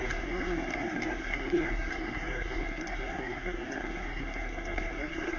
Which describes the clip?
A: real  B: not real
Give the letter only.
B